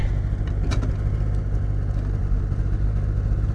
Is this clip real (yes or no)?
yes